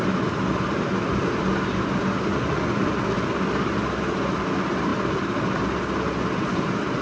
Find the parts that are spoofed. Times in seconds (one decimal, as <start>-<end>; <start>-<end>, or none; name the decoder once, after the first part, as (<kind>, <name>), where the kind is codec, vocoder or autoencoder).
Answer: 2.3-2.9 (vocoder, Vocos)